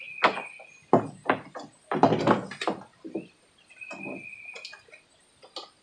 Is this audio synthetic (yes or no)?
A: no